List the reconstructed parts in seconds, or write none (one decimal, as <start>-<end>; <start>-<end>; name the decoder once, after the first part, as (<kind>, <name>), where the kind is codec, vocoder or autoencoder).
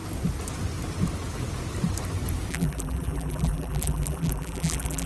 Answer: 2.5-5.1 (vocoder, BigVGAN v2)